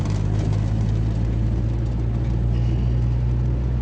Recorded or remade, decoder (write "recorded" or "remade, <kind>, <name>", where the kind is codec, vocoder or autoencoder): recorded